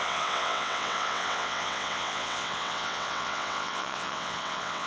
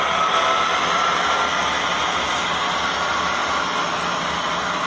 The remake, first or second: first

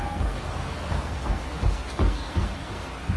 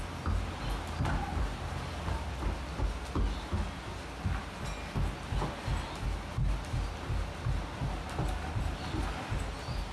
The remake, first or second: first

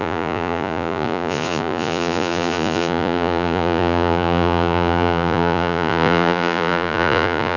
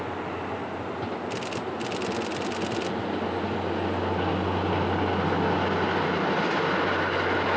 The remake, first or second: first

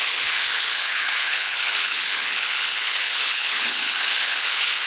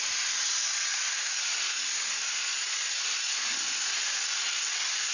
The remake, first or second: first